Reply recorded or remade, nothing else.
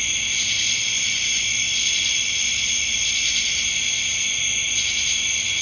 recorded